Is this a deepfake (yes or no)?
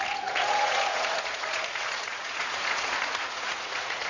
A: yes